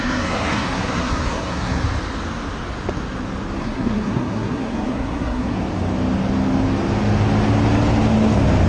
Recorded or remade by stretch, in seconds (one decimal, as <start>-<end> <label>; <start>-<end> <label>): 0.0-1.8 remade; 1.8-3.6 recorded; 3.6-5.6 remade; 5.6-8.7 recorded